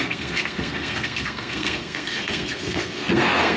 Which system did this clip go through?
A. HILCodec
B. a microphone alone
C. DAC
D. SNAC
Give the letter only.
D